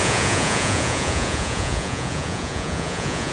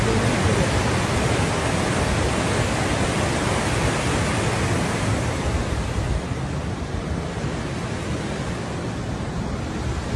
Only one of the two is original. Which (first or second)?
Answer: second